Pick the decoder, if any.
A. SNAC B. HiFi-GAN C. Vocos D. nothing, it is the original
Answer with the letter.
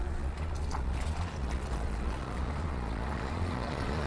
C